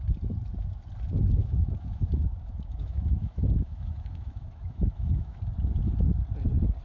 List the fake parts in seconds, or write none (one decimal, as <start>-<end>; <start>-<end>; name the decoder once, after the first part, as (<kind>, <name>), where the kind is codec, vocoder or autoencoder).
1.4-5.4 (autoencoder, DAC-VAE)

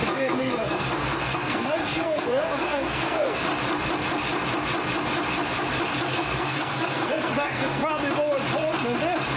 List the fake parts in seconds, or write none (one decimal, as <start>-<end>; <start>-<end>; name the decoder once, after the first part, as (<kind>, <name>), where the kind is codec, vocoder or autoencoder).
0.0-3.5 (codec, SNAC); 6.1-7.8